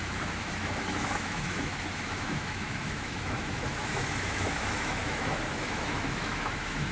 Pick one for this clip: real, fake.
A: fake